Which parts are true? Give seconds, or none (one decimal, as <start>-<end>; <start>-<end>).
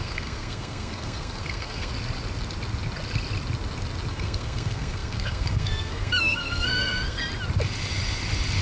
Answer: 1.9-4.1; 7.2-8.6